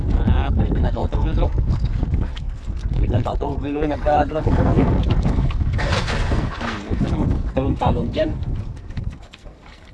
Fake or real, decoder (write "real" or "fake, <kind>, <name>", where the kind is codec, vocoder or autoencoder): fake, codec, SNAC